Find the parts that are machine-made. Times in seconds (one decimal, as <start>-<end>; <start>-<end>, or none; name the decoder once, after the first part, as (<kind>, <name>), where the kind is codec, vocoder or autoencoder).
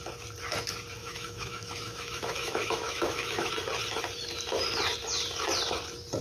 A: 1.0-3.5 (autoencoder, DAC-VAE)